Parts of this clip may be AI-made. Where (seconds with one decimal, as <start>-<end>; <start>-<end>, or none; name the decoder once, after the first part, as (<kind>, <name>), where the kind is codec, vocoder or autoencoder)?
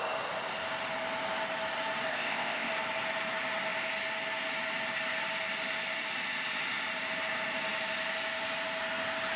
2.1-2.7 (codec, ZipCodec)